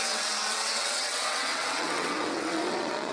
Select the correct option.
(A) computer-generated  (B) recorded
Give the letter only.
A